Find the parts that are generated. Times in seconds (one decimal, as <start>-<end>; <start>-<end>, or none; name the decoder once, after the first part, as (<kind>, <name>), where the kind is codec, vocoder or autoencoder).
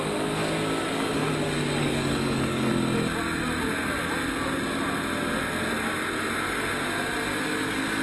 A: 1.8-2.7 (codec, DAC)